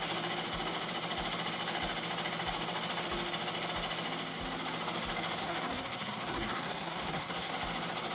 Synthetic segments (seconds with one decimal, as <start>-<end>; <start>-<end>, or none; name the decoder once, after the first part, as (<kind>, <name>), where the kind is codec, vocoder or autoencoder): 5.4-7.5 (codec, SNAC)

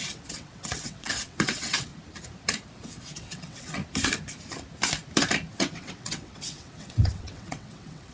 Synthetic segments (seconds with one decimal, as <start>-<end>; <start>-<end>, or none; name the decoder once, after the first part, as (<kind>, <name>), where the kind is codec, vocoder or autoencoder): 0.0-1.9 (vocoder, WaveNeXt); 2.7-3.8; 5.5-8.1

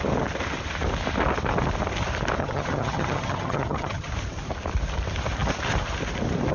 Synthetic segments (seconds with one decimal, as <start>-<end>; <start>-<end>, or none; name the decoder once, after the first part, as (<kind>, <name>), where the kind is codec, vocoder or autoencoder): 2.4-4.1 (vocoder, HiFi-GAN)

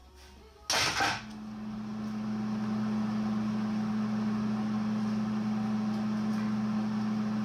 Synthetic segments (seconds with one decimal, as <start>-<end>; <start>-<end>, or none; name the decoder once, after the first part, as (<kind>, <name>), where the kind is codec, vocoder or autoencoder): none

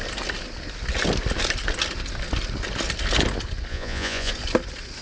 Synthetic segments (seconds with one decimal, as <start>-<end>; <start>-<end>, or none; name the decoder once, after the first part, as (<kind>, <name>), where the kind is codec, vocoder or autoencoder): 3.7-4.3 (vocoder, Vocos)

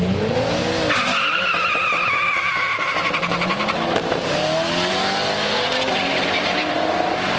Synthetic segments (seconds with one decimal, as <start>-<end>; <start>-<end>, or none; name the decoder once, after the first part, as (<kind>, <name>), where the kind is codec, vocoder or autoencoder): none

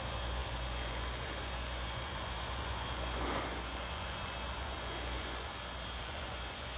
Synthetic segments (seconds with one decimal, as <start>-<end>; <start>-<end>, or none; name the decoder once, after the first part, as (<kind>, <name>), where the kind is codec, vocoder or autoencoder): 0.0-5.5 (vocoder, Vocos); 6.0-6.8

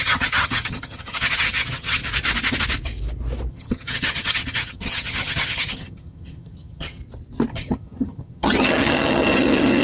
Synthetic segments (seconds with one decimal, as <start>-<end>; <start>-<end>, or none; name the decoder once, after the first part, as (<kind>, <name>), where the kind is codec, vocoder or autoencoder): 0.0-2.0 (vocoder, HiFi-GAN); 3.5-7.0; 7.5-9.8